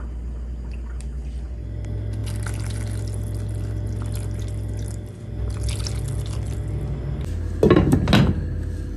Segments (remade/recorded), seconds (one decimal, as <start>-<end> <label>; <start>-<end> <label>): 0.0-9.0 recorded